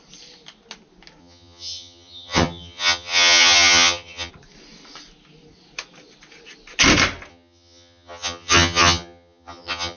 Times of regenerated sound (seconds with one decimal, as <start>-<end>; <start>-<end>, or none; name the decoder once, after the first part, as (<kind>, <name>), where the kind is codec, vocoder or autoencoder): 1.2-4.3 (vocoder, HiFi-GAN); 7.3-10.0